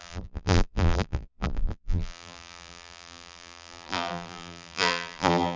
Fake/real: fake